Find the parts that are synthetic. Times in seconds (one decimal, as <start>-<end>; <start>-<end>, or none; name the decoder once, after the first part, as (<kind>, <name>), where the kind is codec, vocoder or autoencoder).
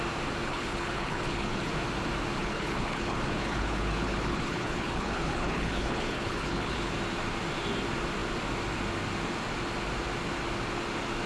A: 0.5-1.7 (codec, HILCodec); 2.4-6.9